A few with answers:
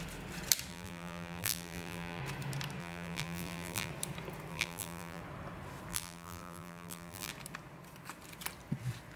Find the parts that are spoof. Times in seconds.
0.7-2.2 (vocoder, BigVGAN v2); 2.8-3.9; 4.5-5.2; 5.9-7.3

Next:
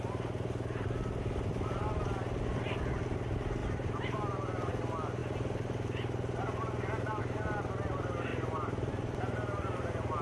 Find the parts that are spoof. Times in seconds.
3.6-4.7 (vocoder, BigVGAN v2); 8.3-8.9